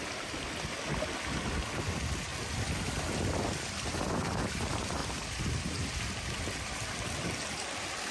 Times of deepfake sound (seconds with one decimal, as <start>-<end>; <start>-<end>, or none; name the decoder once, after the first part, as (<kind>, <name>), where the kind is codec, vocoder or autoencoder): 5.0-5.9 (vocoder, BigVGAN v2)